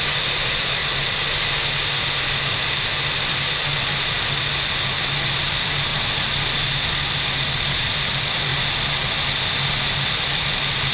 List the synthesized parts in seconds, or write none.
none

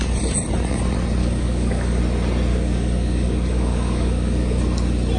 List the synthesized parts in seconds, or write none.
1.2-2.0 (codec, DAC); 2.5-4.6

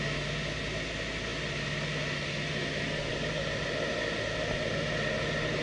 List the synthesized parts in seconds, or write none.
none

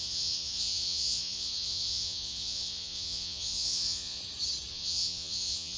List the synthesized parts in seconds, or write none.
0.0-4.2 (vocoder, Vocos); 4.7-5.8

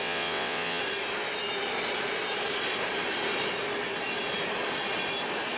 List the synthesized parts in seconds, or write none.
0.0-0.8 (vocoder, WaveNeXt)

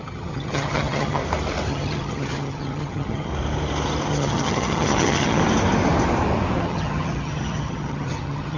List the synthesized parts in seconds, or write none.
0.0-1.2 (vocoder, HiFi-GAN); 1.7-3.3; 4.1-5.4; 6.6-8.6

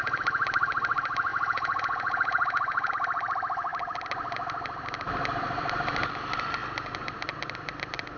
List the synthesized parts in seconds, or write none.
1.3-2.9 (vocoder, Vocos)